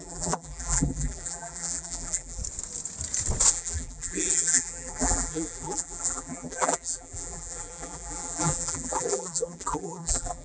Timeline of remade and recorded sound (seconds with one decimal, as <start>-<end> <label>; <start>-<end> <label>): 0.0-2.4 remade; 2.4-3.5 recorded; 3.5-10.4 remade